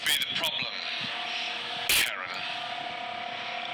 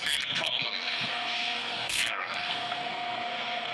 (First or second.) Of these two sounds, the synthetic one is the second